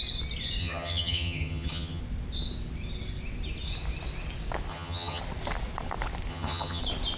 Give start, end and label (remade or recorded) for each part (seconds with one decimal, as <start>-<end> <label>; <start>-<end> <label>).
0.0-0.6 recorded; 0.6-2.0 remade; 2.0-4.7 recorded; 4.7-5.2 remade; 5.2-6.3 recorded; 6.3-6.8 remade; 6.8-7.2 recorded